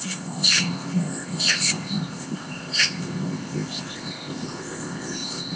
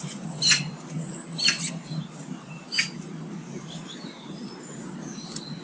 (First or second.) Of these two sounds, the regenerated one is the first